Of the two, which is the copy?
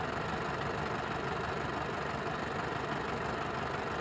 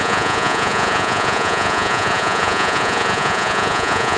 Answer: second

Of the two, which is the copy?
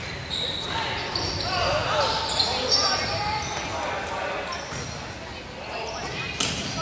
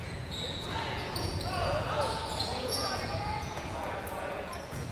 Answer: second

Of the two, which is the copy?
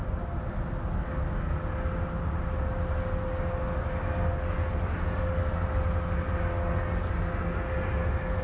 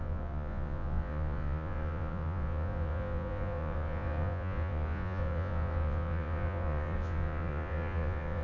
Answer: second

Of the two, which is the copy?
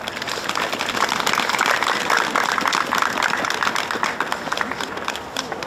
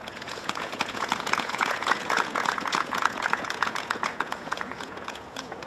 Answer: second